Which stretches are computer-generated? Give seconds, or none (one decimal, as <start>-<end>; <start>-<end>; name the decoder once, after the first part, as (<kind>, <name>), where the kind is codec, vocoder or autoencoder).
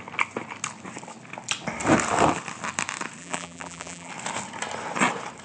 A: 3.2-4.1 (vocoder, BigVGAN v2)